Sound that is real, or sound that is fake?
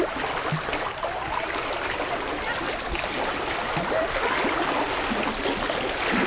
real